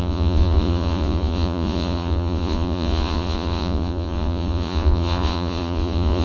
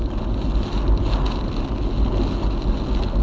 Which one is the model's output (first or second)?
first